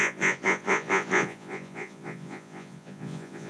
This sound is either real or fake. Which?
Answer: fake